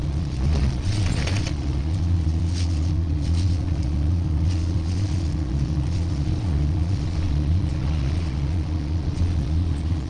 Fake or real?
fake